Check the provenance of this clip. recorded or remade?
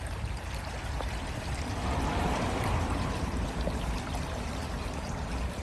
recorded